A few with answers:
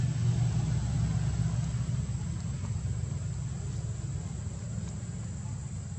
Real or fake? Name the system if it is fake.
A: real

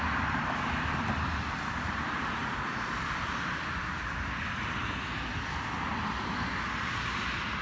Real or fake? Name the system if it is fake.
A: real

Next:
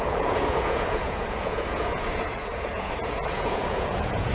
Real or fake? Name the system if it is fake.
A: fake, vocoder, Vocos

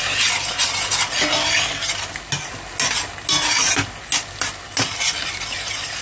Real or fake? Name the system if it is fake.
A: real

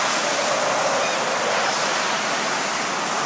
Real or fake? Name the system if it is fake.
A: real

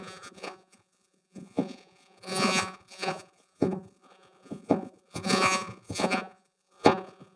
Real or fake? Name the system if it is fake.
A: fake, vocoder, Vocos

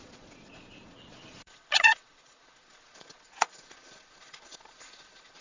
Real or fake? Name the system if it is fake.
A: fake, vocoder, Vocos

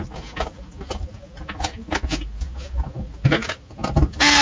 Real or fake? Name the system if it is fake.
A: real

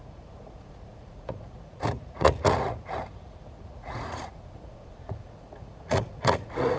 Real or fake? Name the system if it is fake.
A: fake, vocoder, Vocos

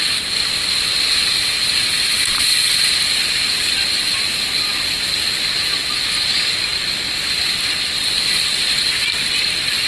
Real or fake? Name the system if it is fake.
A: real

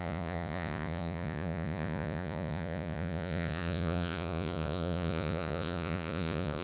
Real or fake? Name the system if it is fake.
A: fake, vocoder, Vocos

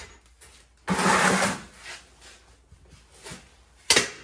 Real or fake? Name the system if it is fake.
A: real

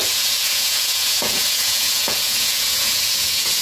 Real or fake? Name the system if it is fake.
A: fake, vocoder, Vocos